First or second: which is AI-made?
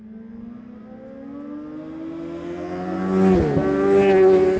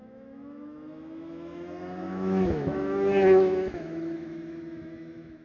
second